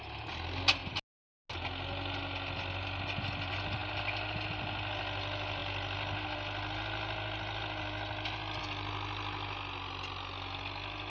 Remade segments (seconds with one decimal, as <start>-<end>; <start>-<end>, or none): none